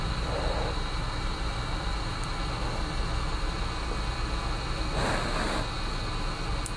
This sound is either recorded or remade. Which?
recorded